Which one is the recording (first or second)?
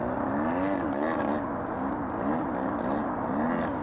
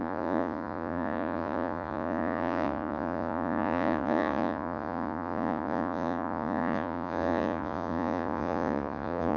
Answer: first